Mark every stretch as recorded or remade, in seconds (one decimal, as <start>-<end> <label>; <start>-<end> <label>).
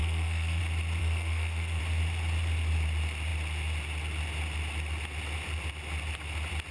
0.0-0.6 remade; 0.6-1.0 recorded; 1.0-1.8 remade; 1.8-6.7 recorded